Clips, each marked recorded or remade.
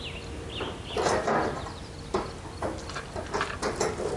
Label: recorded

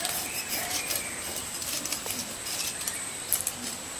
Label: remade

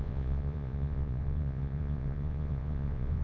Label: remade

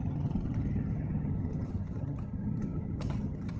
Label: remade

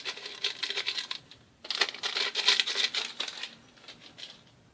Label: recorded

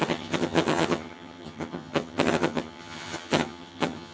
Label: remade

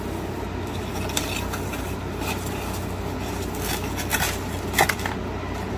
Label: recorded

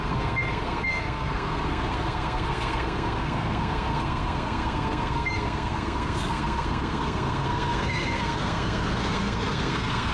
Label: remade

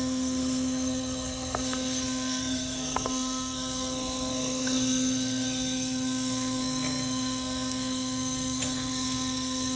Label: remade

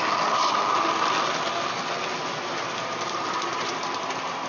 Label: recorded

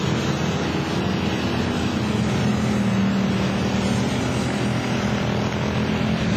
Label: recorded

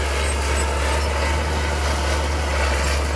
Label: recorded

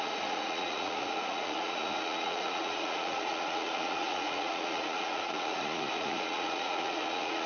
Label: remade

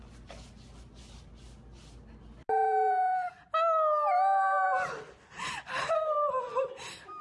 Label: recorded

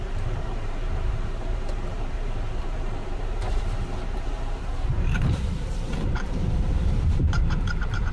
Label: remade